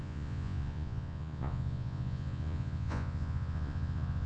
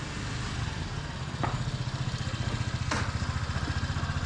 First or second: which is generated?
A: first